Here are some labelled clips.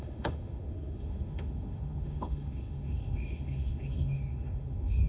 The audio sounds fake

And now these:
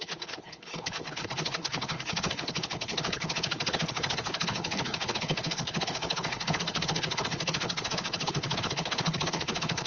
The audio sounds fake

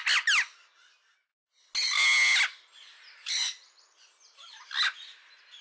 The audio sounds real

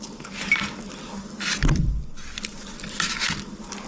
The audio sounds real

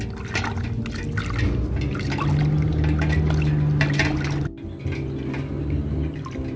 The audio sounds real